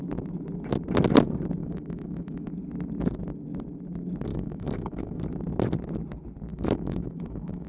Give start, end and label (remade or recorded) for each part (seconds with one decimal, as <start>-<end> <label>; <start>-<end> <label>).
0.0-1.6 recorded; 1.6-2.5 remade; 2.5-4.3 recorded; 4.3-5.2 remade; 5.2-6.5 recorded; 6.5-7.7 remade